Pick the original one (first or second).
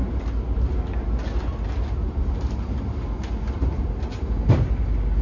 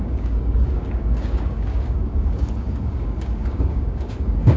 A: first